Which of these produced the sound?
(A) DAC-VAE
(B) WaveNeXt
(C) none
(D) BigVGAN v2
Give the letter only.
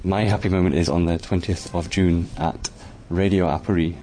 B